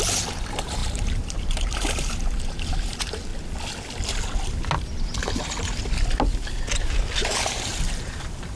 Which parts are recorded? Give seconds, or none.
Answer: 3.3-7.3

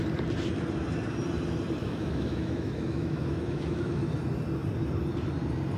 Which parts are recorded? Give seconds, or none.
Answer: 0.0-1.8; 4.1-5.8

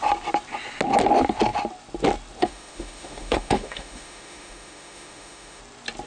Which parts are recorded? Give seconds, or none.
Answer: 0.0-2.4; 5.6-6.1

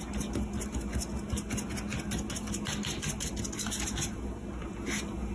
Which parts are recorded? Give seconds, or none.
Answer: 0.0-5.3

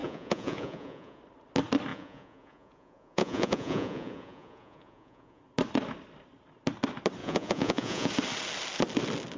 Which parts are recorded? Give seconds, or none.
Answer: 1.2-1.9; 5.4-7.2; 8.1-9.4

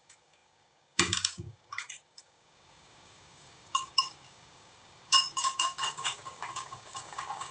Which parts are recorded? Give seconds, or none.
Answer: none